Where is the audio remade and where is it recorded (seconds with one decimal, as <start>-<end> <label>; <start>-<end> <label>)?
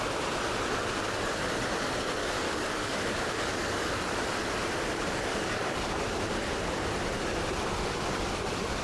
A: 0.0-2.2 recorded; 2.2-3.9 remade; 3.9-5.3 recorded; 5.3-6.0 remade; 6.0-8.8 recorded